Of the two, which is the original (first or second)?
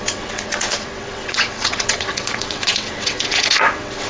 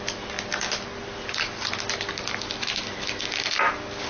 second